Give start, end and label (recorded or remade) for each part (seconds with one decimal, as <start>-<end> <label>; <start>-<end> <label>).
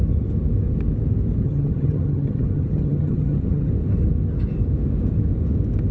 0.0-1.4 recorded; 1.4-3.7 remade; 3.7-5.9 recorded